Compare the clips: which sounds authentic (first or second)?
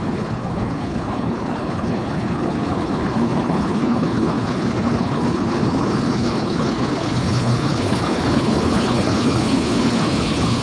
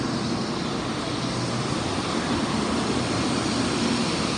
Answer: second